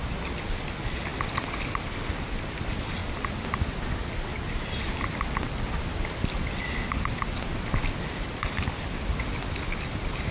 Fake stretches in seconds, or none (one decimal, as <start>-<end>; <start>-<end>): none